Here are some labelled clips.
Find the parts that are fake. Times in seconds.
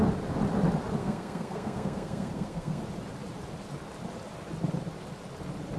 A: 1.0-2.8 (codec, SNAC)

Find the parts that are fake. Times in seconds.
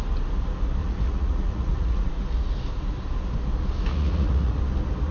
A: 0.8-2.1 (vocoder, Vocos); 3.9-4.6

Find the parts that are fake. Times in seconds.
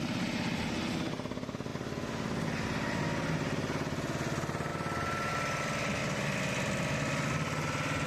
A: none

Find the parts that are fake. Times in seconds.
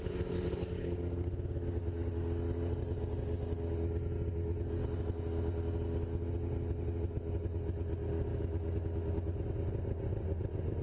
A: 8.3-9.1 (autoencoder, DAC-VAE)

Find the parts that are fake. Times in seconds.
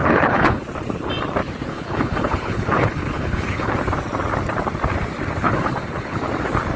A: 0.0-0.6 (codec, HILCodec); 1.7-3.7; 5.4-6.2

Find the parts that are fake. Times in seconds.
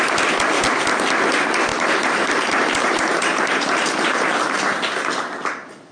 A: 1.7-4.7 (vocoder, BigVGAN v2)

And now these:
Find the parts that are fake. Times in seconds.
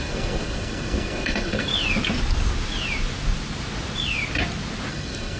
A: 0.0-1.7 (codec, SNAC); 4.9-5.4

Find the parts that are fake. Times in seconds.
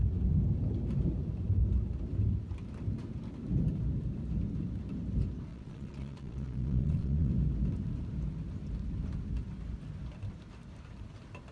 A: 5.5-7.3 (vocoder, Vocos)